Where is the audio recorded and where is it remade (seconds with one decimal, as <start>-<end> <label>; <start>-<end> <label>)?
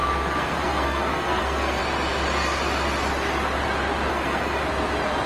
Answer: 0.0-1.8 remade; 1.8-4.1 recorded; 4.1-4.6 remade; 4.6-5.3 recorded